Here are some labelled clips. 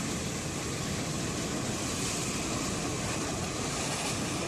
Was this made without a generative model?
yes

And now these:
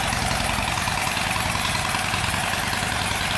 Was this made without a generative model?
yes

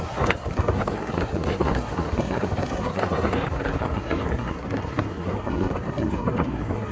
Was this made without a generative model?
no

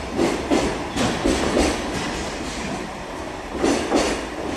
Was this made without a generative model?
yes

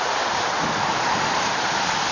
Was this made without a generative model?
yes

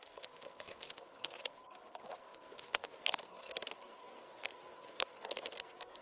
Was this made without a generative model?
no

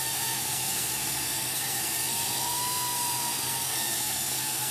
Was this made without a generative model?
no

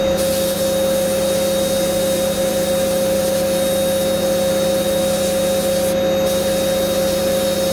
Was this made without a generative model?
yes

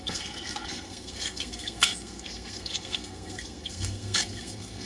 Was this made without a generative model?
no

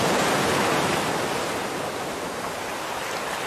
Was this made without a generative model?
yes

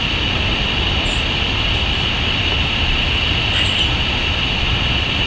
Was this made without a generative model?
yes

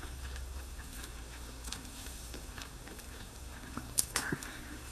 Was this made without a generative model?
no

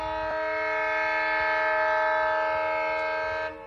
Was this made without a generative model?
yes